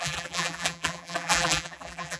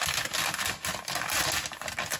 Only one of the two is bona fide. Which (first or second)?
second